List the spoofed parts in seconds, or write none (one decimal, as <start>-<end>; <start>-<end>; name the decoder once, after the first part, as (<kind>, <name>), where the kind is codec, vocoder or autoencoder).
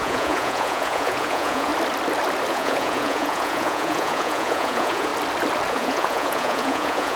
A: 0.0-1.7 (vocoder, Vocos); 2.5-5.1; 5.7-7.2